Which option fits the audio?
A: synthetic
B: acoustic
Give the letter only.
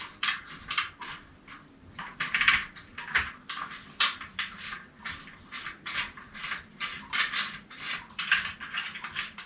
B